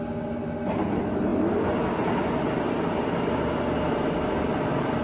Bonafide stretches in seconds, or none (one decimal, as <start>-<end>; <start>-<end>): 0.0-5.0